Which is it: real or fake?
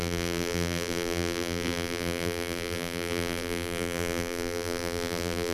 fake